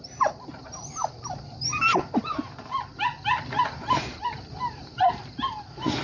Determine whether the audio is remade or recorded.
remade